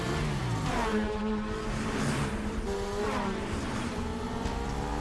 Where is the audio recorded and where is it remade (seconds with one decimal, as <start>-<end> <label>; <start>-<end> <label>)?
0.0-0.9 recorded; 0.9-3.9 remade; 3.9-5.0 recorded